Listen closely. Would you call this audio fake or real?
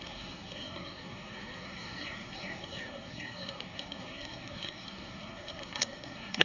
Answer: fake